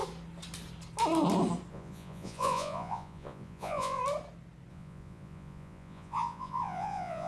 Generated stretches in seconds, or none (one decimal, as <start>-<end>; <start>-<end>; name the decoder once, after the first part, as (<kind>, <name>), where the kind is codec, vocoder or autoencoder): 1.7-4.0 (vocoder, Vocos); 4.7-7.3